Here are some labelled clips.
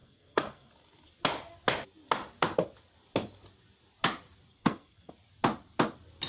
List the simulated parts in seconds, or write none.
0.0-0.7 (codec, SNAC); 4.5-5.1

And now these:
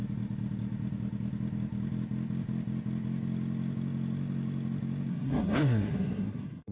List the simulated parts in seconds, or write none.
5.1-6.7 (codec, SNAC)

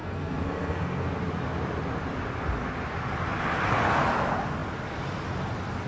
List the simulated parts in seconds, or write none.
0.0-1.1 (codec, SNAC)